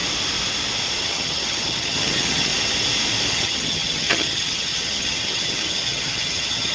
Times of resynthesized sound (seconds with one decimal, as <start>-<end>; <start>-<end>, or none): 1.0-2.5; 3.3-6.7